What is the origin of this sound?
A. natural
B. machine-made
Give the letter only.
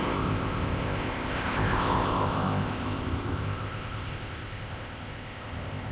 B